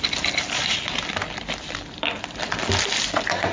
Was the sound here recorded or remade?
recorded